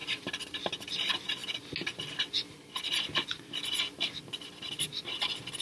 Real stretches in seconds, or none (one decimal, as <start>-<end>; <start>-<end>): 0.6-5.6